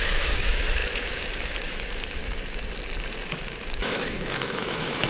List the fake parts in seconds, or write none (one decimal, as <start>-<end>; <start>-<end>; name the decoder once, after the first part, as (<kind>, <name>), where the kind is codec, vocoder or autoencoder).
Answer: 0.0-2.2 (autoencoder, DAC-VAE); 3.3-5.1